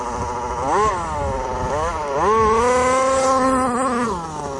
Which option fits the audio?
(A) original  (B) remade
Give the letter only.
A